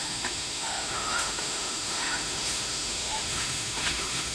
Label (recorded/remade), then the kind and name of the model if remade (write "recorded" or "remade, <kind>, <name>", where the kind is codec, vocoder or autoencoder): remade, autoencoder, DAC-VAE